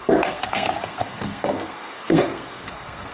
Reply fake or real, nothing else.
fake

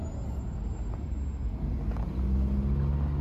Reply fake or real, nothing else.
real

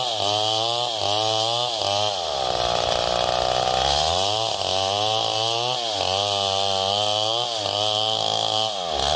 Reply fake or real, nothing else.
real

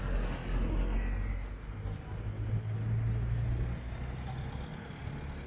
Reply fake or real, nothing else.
real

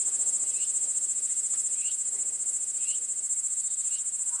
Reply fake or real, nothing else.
real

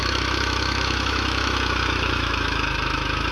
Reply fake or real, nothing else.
fake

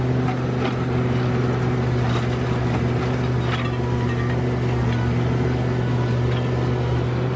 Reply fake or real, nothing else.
real